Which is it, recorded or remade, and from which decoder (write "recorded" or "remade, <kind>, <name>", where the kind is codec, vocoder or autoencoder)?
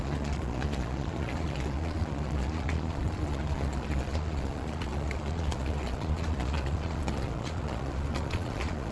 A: remade, vocoder, Vocos